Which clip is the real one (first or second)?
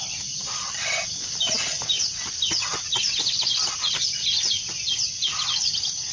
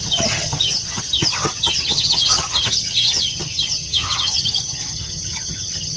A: first